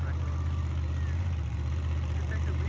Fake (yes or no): no